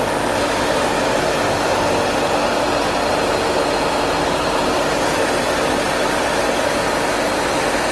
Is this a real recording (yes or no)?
yes